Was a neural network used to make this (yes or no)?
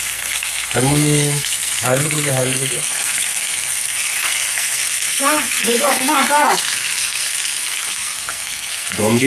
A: yes